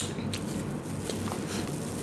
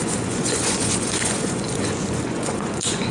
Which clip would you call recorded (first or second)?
first